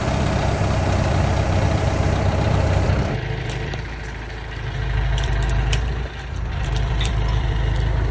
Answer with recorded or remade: remade